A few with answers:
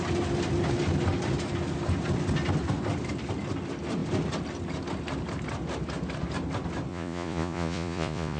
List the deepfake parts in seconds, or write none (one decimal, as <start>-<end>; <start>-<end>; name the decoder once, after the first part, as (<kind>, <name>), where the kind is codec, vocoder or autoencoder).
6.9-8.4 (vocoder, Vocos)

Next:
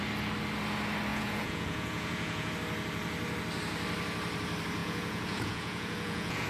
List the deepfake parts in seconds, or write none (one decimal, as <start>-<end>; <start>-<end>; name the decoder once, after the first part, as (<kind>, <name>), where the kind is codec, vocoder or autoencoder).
1.1-2.5 (vocoder, Vocos); 4.8-6.5

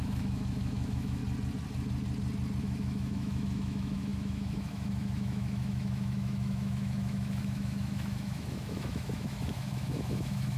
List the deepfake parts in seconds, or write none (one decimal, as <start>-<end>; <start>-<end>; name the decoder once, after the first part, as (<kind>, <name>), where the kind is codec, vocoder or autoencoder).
0.0-1.2 (autoencoder, DAC-VAE); 2.6-10.6

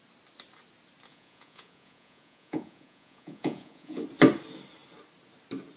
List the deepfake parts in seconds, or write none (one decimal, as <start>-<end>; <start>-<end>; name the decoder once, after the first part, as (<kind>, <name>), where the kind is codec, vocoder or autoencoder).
1.1-4.0 (vocoder, Vocos)

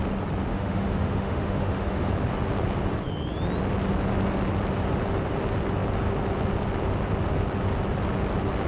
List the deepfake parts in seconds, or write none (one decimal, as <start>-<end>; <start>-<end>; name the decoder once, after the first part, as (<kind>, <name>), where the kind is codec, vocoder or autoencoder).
0.5-2.1 (autoencoder, DAC-VAE)

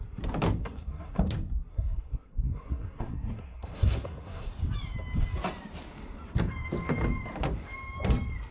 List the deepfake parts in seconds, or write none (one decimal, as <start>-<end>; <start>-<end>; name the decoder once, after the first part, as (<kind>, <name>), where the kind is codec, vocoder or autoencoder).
0.6-1.2 (codec, SNAC); 1.7-4.5

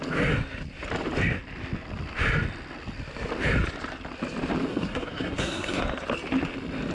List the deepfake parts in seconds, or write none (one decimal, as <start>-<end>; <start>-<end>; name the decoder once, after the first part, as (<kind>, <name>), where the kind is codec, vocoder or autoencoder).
4.7-5.8 (codec, SNAC)